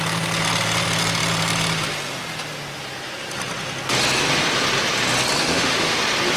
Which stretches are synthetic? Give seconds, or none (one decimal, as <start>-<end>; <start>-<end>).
5.4-6.0